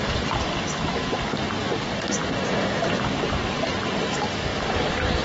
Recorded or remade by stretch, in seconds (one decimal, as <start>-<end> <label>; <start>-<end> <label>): 0.0-5.2 recorded